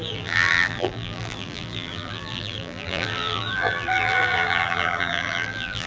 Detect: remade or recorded remade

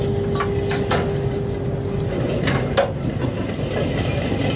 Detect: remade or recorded recorded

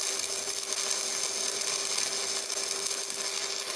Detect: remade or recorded recorded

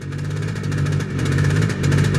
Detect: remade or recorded remade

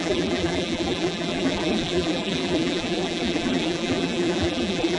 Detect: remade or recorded remade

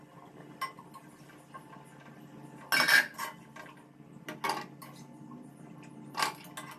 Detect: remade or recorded recorded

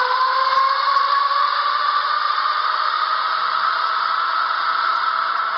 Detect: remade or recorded remade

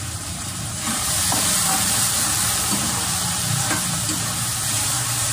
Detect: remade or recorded remade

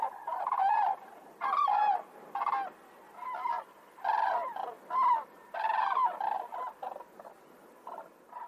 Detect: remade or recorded recorded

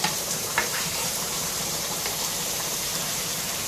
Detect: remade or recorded remade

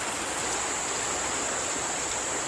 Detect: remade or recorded recorded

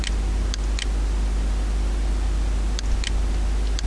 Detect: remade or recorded recorded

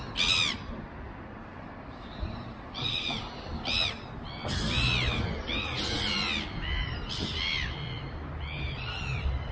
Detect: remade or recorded remade